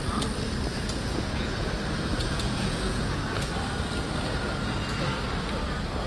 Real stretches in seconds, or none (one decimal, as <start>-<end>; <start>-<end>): 0.0-0.7; 1.7-2.1; 3.5-6.1